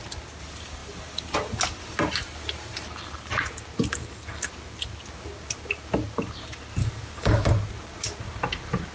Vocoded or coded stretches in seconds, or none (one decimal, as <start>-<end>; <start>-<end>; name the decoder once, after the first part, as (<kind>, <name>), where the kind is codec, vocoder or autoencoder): 4.0-4.5 (codec, DAC); 6.8-7.5